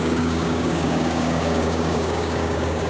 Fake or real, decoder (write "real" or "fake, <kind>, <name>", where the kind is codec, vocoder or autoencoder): fake, codec, DAC